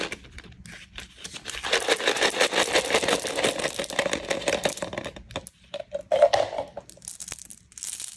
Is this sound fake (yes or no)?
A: no